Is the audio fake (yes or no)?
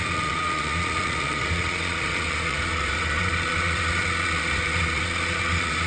yes